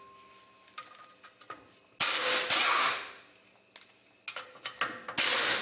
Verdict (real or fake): real